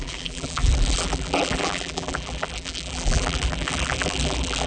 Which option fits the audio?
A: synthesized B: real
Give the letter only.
A